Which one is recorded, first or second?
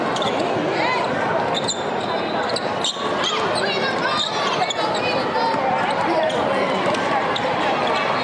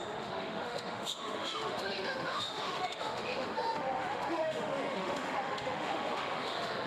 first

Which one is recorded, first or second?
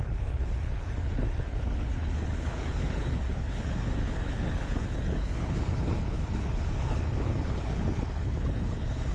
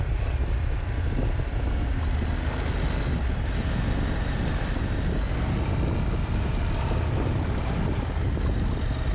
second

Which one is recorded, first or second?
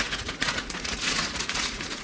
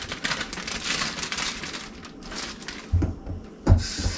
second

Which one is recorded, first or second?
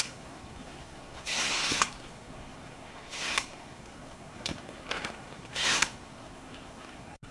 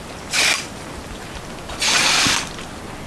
second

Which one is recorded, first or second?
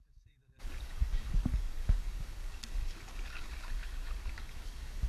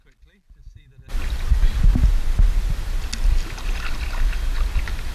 second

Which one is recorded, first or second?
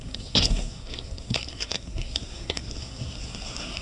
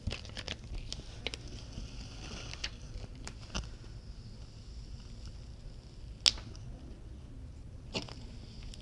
second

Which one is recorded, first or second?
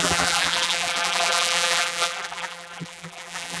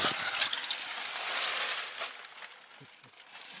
second